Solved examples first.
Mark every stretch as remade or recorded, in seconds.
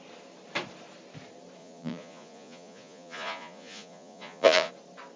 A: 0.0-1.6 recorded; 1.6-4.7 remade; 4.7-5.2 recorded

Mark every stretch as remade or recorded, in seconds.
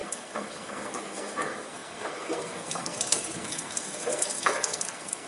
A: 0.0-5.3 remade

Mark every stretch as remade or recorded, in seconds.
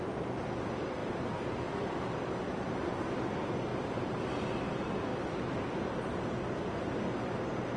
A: 0.0-1.0 recorded; 1.0-2.1 remade; 2.1-3.7 recorded; 3.7-4.2 remade; 4.2-7.8 recorded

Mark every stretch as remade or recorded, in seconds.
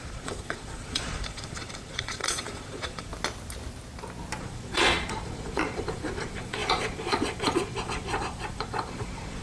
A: 0.0-3.1 remade; 3.1-4.4 recorded; 4.4-9.4 remade